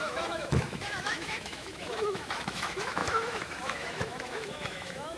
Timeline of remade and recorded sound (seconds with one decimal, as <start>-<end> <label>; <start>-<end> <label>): 0.0-5.2 remade